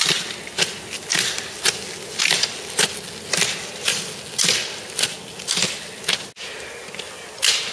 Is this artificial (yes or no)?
no